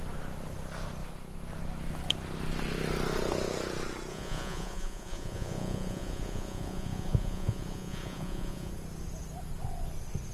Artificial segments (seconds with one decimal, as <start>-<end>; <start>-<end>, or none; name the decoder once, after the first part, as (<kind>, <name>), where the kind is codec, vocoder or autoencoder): 4.1-8.7 (vocoder, Vocos)